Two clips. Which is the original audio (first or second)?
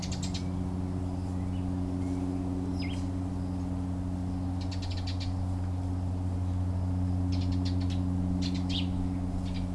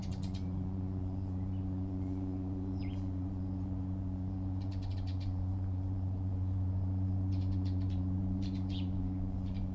first